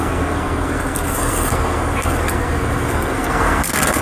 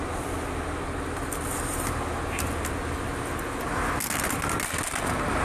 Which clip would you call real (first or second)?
second